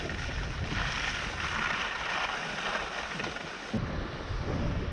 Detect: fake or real real